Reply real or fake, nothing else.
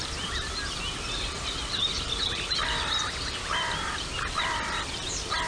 fake